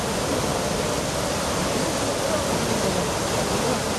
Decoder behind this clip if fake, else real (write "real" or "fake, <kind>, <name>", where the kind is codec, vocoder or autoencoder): real